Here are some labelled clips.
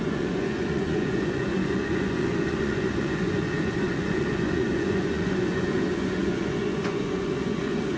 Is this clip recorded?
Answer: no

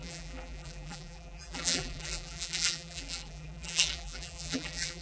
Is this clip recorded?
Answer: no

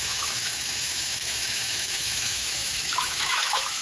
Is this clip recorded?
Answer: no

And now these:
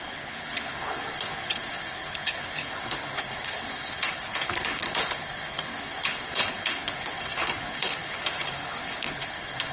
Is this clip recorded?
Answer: no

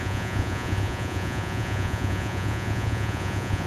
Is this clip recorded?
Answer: no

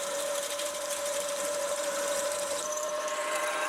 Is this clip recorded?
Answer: no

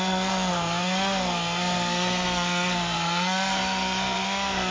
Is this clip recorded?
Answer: no